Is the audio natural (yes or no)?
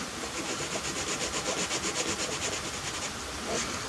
yes